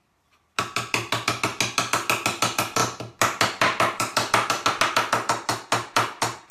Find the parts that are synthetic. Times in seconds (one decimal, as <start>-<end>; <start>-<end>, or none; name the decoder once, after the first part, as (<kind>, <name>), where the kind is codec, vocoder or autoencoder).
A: none